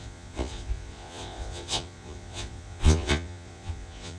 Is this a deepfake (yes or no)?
yes